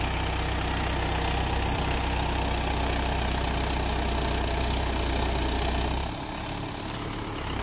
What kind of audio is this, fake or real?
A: real